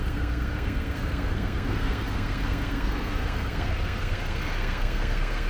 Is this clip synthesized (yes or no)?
yes